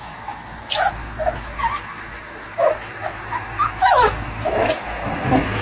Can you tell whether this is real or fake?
fake